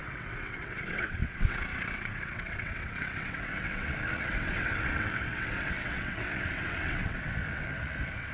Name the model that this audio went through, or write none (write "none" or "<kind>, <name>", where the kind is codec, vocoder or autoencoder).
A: vocoder, WaveNeXt